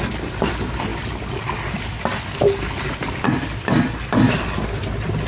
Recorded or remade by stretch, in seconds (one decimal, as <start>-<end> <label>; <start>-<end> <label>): 0.0-5.3 recorded